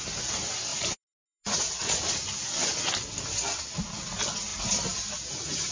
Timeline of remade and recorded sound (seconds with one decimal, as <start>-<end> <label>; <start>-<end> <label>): 0.0-5.7 recorded